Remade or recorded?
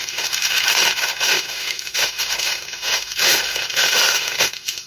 remade